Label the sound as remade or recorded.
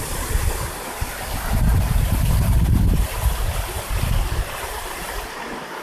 recorded